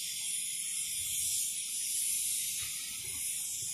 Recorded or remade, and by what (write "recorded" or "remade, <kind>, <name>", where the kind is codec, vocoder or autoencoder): recorded